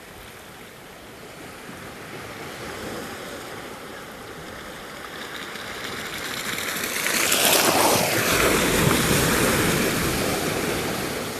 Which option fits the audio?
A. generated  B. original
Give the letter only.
B